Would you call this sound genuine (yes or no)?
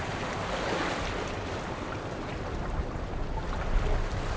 yes